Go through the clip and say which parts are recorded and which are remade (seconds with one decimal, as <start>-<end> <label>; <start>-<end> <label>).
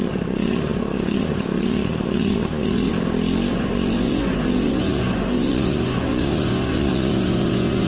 0.0-2.9 remade; 2.9-3.5 recorded; 3.5-7.9 remade